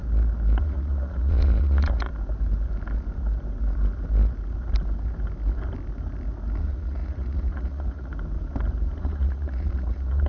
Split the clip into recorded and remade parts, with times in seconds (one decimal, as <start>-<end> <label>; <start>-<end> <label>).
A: 0.0-0.6 recorded; 0.6-2.1 remade; 2.1-6.6 recorded; 6.6-8.1 remade; 8.1-9.0 recorded; 9.0-10.3 remade